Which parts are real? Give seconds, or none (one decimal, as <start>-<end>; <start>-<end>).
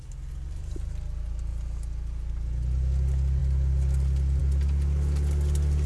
0.0-5.9